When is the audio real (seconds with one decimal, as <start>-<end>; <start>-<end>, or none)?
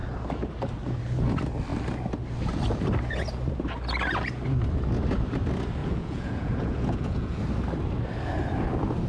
0.0-5.8; 7.4-9.1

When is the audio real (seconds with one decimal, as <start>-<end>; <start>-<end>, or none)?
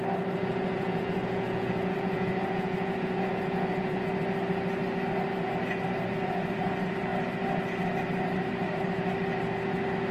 0.0-0.4; 4.1-10.1